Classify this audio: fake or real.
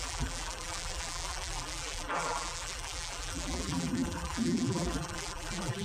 fake